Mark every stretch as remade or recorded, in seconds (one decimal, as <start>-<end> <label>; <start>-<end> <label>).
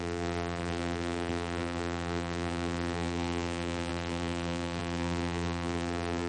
0.0-6.3 remade